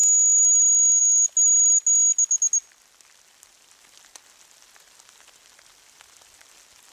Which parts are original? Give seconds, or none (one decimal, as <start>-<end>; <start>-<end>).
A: 0.0-6.9